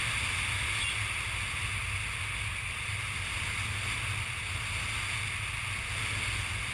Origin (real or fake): real